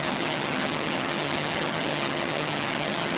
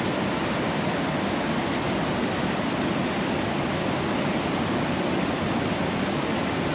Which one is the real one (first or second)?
second